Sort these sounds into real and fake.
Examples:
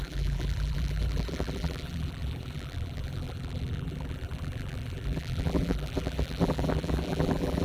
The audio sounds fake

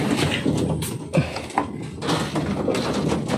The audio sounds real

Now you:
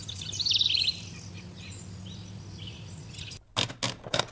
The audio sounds real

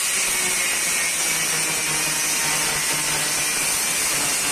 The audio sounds real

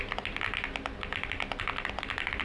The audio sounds real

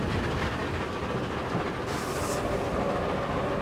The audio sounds real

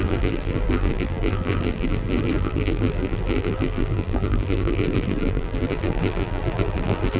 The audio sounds fake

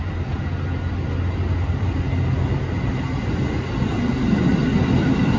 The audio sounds real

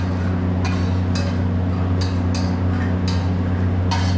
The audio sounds real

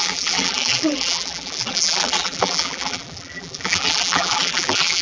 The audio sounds fake